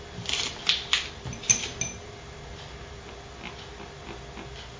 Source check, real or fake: real